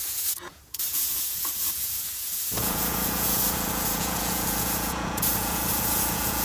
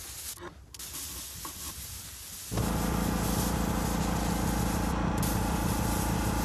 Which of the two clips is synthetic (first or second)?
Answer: first